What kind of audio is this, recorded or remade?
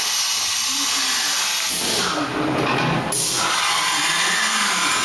recorded